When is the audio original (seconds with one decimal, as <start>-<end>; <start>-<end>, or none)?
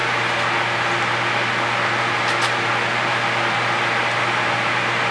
0.0-5.1